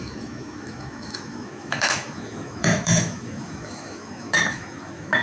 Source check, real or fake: fake